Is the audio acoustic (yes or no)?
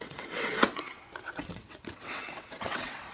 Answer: no